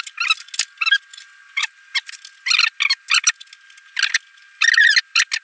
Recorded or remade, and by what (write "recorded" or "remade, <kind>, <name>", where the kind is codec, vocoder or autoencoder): recorded